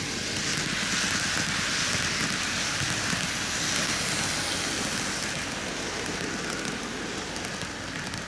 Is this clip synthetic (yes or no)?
no